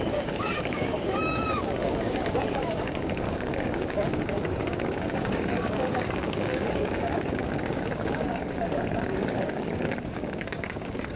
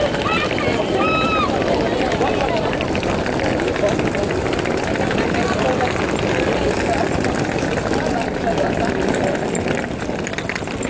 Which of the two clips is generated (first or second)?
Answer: first